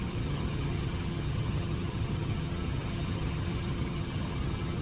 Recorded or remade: remade